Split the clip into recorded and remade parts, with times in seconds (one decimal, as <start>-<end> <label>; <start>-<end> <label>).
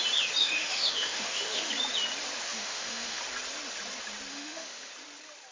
0.0-0.4 recorded; 0.4-1.7 remade; 1.7-2.5 recorded; 2.5-3.2 remade; 3.2-4.3 recorded; 4.3-4.9 remade; 4.9-5.5 recorded